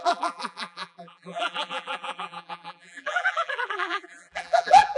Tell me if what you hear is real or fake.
fake